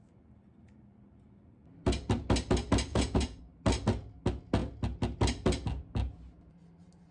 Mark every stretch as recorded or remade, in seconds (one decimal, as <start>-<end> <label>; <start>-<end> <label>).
0.0-2.9 recorded; 2.9-3.4 remade; 3.4-7.1 recorded